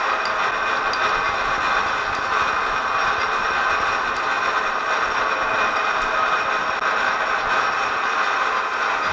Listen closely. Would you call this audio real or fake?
real